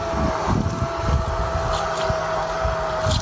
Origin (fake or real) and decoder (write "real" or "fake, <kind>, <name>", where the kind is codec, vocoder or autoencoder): real